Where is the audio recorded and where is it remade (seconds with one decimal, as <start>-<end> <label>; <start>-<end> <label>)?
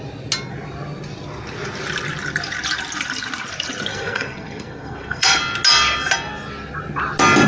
0.0-3.9 recorded; 3.9-5.4 remade; 5.4-7.5 recorded